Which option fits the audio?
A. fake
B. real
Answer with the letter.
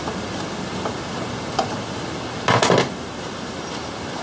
B